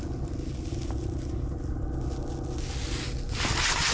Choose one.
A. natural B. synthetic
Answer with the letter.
A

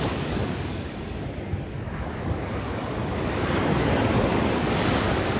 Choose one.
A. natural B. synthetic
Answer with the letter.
B